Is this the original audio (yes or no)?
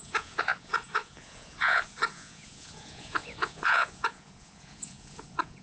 no